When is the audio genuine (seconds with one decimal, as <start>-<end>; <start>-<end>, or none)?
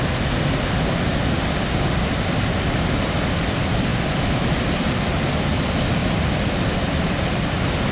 0.0-7.9